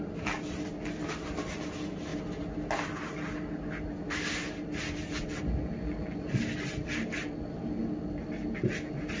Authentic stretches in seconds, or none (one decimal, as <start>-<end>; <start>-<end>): 0.0-9.2